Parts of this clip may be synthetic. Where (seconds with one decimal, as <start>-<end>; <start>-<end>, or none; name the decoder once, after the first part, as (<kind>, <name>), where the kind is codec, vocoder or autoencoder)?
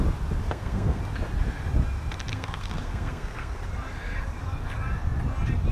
0.4-1.0 (codec, SNAC); 2.3-3.6